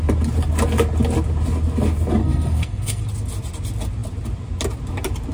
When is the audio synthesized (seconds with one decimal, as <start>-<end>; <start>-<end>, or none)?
2.2-3.0